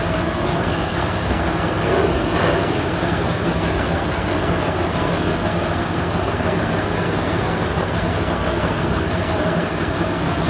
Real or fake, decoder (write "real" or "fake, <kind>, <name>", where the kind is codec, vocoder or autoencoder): fake, codec, SNAC